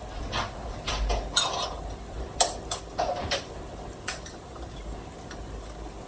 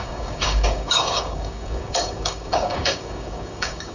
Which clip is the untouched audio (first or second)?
first